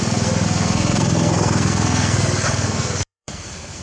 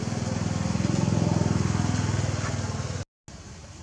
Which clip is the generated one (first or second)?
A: first